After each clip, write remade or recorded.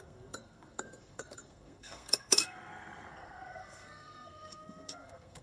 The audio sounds remade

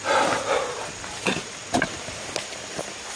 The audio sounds recorded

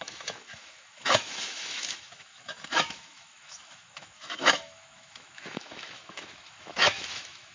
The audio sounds remade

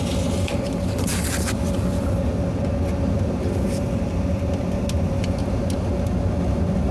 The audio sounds recorded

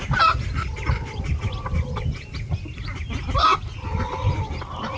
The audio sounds recorded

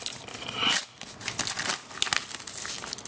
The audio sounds recorded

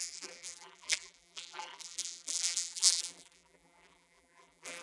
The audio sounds remade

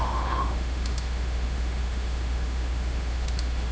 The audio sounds remade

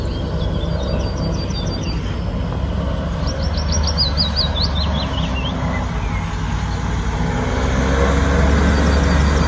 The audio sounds recorded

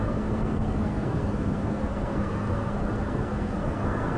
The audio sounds remade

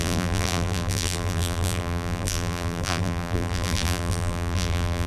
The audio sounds remade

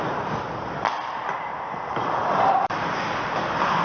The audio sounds remade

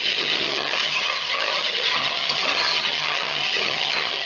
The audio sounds remade